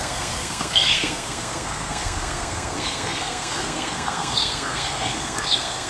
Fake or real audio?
fake